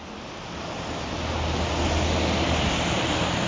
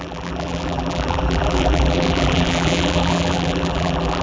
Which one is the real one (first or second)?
first